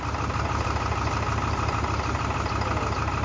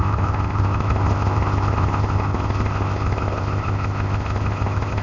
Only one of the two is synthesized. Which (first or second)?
second